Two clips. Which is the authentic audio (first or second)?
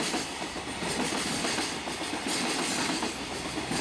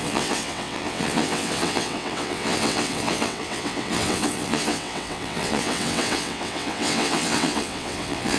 first